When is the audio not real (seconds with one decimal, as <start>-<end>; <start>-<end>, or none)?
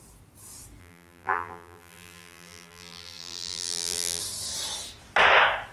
0.8-4.2